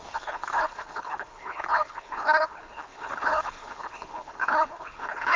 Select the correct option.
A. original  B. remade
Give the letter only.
B